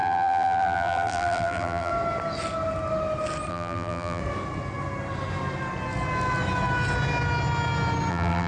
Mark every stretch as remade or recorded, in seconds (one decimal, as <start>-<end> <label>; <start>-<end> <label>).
0.0-1.9 remade; 1.9-3.5 recorded; 3.5-4.2 remade; 4.2-8.1 recorded; 8.1-8.5 remade